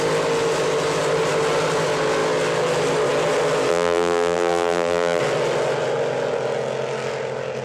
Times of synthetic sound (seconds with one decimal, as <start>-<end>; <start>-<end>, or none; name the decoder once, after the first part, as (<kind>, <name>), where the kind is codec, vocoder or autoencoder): 3.7-5.2 (vocoder, BigVGAN v2)